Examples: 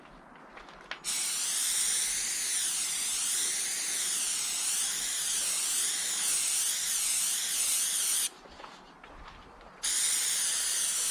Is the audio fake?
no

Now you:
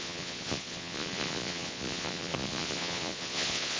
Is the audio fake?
yes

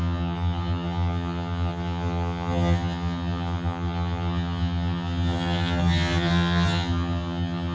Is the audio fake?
yes